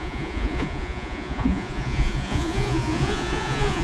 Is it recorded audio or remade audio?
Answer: remade